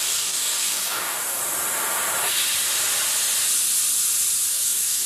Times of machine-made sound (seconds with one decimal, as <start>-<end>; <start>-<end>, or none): 0.0-1.4; 4.5-5.1